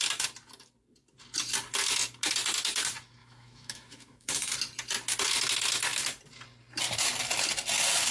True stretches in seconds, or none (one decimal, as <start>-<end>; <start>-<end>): 0.0-3.2; 4.5-8.1